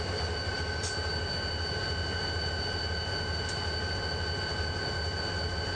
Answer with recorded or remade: recorded